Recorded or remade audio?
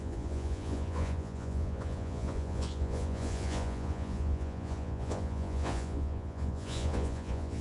remade